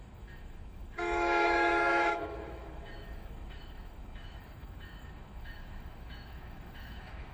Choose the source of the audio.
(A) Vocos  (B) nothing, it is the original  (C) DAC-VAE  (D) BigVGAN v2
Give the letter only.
C